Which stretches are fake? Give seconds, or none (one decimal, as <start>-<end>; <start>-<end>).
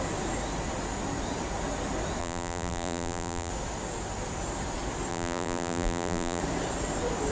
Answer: 2.2-3.5; 5.1-6.4